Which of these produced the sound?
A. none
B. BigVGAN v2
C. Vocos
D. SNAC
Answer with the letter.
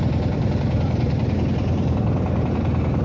B